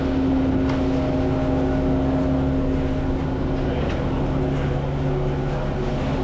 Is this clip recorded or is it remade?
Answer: recorded